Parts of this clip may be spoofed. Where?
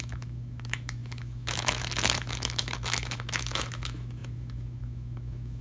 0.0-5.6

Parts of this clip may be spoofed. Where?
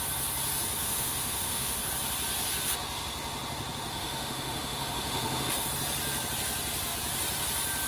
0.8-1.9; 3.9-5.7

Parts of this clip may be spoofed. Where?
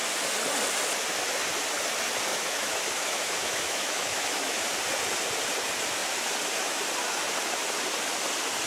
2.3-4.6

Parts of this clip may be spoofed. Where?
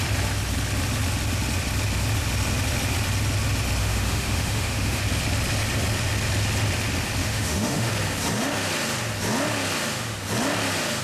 3.8-5.0; 7.2-7.9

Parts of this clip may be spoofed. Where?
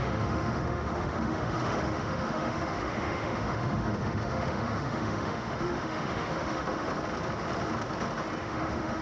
0.0-6.9; 8.4-9.0